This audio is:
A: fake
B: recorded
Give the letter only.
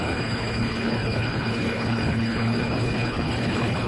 A